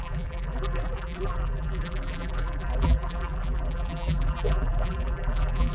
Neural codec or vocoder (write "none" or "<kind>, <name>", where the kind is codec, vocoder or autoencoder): vocoder, BigVGAN v2